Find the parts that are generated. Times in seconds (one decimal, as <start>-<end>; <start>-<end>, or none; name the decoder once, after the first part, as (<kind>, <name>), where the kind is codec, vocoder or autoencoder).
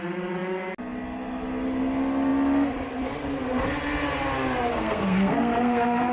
4.7-6.1 (codec, SNAC)